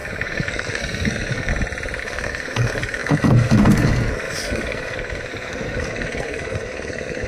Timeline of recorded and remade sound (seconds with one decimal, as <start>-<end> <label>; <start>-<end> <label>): 0.0-1.5 remade; 1.5-2.0 recorded; 2.0-7.3 remade